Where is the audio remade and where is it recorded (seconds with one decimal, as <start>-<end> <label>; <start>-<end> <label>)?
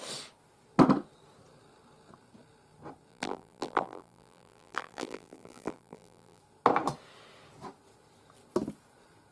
0.0-3.1 recorded; 3.1-6.4 remade; 6.4-9.3 recorded